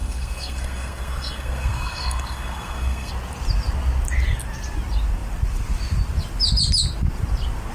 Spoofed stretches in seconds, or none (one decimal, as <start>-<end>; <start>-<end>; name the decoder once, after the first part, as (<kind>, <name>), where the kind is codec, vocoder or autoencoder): 0.0-3.1 (codec, SNAC)